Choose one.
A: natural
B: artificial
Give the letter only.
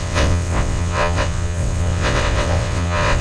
B